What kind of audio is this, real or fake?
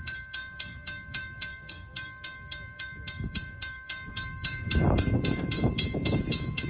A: fake